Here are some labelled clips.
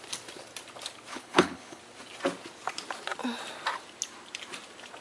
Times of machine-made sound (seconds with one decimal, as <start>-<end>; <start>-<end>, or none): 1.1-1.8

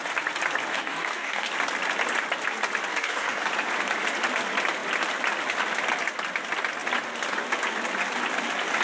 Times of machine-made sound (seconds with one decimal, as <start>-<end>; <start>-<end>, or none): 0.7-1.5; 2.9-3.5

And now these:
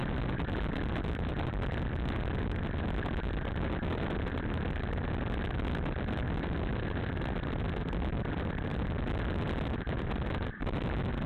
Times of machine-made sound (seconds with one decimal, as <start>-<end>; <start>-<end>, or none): none

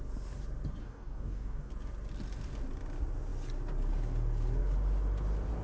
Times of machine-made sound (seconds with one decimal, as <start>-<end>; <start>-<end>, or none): 0.8-1.7

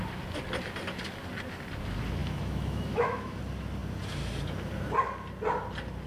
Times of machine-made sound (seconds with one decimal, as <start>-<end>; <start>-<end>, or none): 2.2-3.4

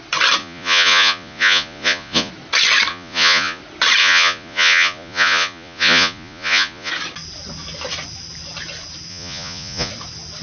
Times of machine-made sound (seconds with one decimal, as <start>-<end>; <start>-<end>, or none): 0.4-2.3; 2.9-3.6; 4.0-6.9; 9.1-9.9

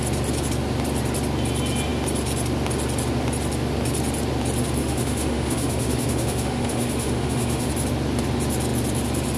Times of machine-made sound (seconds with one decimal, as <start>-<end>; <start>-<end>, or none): 4.8-7.7

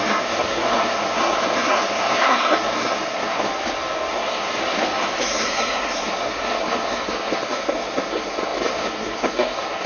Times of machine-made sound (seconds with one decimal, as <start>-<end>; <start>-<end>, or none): 0.0-3.5; 4.1-4.6; 5.2-9.9